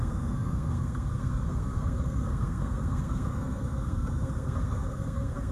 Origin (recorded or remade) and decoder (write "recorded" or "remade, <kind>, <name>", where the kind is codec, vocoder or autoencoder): remade, codec, SNAC